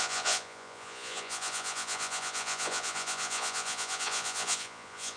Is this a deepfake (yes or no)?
yes